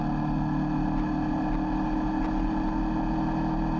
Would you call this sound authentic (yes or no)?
yes